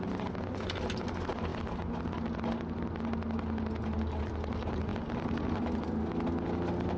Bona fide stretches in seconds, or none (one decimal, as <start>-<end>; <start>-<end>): 0.0-7.0